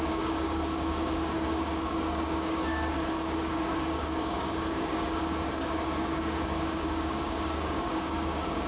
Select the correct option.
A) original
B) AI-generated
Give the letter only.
B